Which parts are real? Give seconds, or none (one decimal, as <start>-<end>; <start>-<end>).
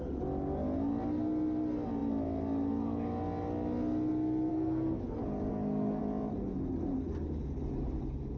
0.0-4.5; 5.0-5.5; 6.0-8.4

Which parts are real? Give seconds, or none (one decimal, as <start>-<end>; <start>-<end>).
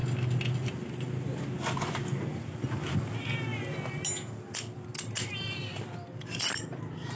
0.0-7.2